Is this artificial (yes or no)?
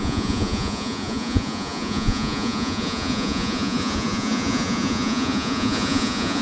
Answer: yes